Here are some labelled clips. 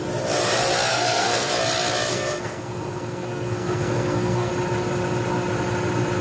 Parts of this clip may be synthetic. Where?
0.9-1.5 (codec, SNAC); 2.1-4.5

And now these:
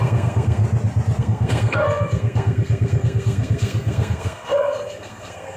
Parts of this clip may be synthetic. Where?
0.0-0.6 (codec, SNAC); 1.2-5.6

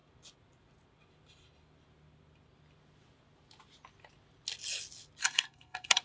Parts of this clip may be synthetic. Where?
5.2-6.0 (codec, SNAC)

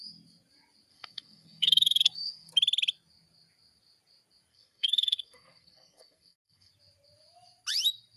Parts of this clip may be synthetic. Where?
0.9-2.5 (codec, SNAC); 4.5-6.7